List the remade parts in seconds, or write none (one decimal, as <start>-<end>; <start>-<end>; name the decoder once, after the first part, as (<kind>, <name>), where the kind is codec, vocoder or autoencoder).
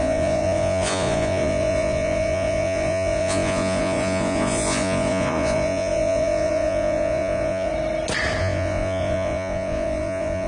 0.0-7.7 (vocoder, Vocos); 8.4-10.5